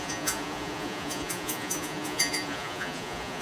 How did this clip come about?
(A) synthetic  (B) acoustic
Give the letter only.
A